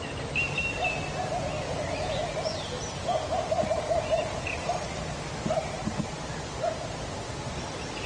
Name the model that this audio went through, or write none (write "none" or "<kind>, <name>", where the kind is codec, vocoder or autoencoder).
none